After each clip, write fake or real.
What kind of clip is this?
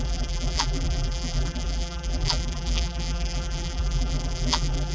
fake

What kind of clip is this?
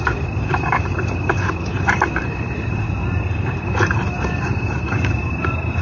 fake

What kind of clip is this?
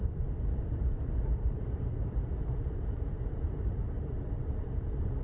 fake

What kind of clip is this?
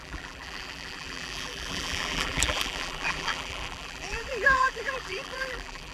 fake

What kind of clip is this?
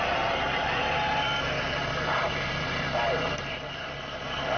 fake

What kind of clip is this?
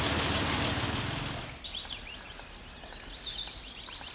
real